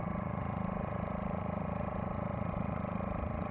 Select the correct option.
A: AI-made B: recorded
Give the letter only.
A